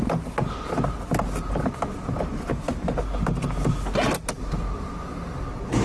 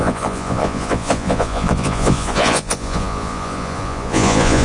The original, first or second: first